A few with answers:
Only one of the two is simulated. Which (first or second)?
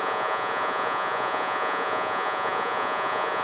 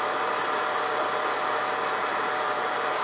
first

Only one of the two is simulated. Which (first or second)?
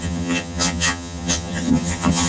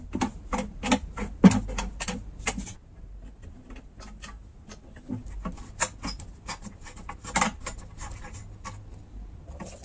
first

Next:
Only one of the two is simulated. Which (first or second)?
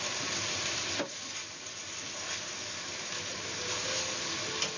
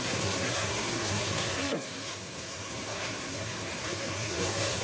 second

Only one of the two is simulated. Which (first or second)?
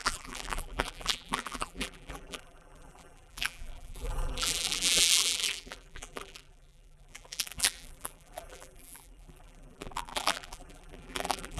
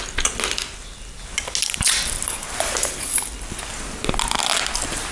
first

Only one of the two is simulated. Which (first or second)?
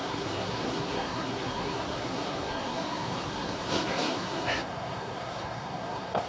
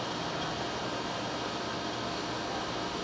first